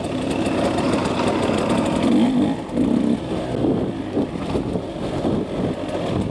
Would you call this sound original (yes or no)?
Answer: yes